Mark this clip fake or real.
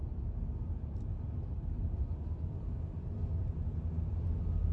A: real